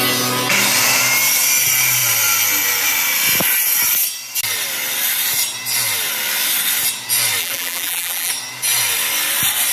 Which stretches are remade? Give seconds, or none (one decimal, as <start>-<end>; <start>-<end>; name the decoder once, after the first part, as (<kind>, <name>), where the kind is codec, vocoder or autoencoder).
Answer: 7.4-8.3 (vocoder, BigVGAN v2)

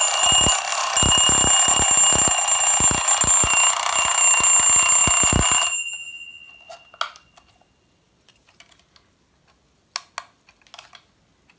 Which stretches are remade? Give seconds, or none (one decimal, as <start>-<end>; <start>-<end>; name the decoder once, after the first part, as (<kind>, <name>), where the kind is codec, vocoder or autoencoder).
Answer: none

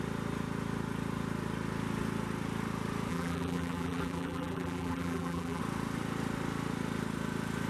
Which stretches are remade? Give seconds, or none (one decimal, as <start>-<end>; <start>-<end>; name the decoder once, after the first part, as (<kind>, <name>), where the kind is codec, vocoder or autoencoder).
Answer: 3.1-5.6 (vocoder, BigVGAN v2)

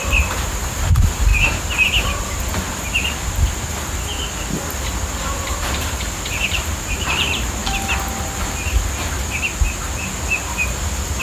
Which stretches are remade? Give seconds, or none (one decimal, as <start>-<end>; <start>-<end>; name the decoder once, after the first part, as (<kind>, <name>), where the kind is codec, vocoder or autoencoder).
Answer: 0.0-1.3 (vocoder, BigVGAN v2); 5.2-7.6

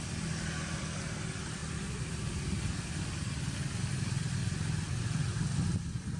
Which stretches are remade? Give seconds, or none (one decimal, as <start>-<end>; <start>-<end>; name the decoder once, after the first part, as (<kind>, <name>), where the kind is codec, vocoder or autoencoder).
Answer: 1.6-3.4 (vocoder, BigVGAN v2); 4.4-4.9